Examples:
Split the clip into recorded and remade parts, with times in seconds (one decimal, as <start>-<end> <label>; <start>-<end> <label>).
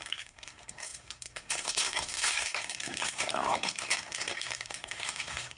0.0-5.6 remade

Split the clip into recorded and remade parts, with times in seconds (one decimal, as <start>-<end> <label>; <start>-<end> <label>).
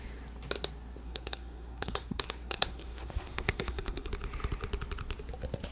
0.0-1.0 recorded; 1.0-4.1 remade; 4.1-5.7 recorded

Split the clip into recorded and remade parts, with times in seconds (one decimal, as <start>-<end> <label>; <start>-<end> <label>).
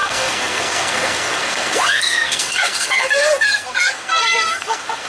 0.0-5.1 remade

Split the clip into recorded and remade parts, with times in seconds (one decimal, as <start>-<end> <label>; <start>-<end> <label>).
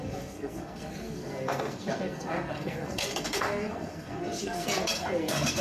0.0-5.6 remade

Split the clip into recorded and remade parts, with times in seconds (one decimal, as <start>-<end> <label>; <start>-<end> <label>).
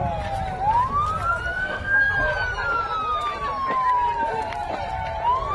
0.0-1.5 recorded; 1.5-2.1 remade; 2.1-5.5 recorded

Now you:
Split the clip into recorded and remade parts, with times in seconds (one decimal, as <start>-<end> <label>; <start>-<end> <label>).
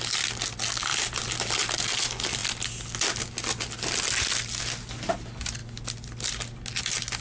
0.0-7.2 recorded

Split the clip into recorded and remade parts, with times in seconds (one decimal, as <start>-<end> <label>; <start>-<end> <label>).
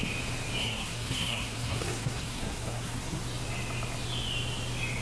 0.0-0.6 recorded; 0.6-3.2 remade; 3.2-5.0 recorded